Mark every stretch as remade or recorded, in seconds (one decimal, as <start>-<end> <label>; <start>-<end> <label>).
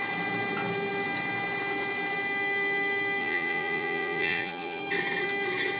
0.0-3.2 recorded; 3.2-4.8 remade; 4.8-5.8 recorded